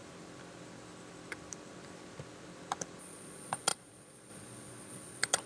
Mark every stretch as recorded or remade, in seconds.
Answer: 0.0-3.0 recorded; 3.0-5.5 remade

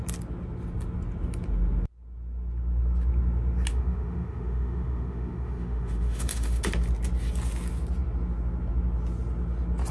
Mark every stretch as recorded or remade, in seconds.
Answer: 0.0-3.7 recorded; 3.7-6.6 remade; 6.6-9.9 recorded

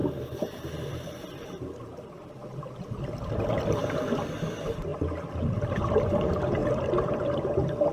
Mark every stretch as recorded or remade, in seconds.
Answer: 0.0-4.4 recorded; 4.4-4.9 remade; 4.9-5.7 recorded; 5.7-6.6 remade; 6.6-7.9 recorded

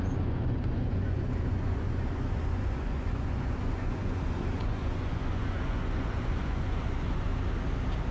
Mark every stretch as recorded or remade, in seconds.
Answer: 0.0-7.3 remade; 7.3-8.1 recorded

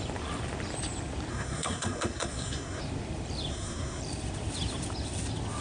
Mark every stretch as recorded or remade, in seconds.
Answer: 0.0-1.3 recorded; 1.3-2.8 remade; 2.8-3.5 recorded; 3.5-4.0 remade; 4.0-5.6 recorded